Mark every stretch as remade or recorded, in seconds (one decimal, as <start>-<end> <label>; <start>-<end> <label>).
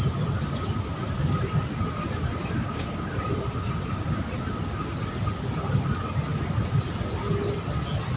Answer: 0.0-2.6 recorded; 2.6-3.1 remade; 3.1-8.2 recorded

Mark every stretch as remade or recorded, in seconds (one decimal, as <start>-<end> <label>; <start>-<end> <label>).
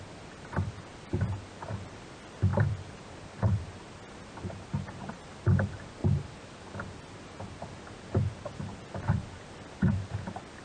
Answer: 0.0-10.6 recorded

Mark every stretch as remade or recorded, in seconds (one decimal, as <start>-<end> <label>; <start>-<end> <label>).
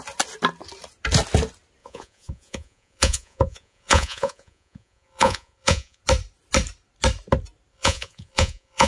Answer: 0.0-1.8 recorded; 1.8-6.0 remade; 6.0-7.7 recorded; 7.7-8.9 remade